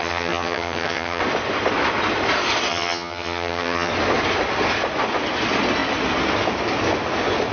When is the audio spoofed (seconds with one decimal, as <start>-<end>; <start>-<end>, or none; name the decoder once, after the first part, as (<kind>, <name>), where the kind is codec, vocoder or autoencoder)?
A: 0.0-1.2 (vocoder, HiFi-GAN); 2.7-3.9